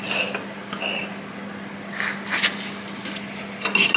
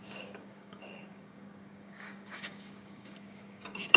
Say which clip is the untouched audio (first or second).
first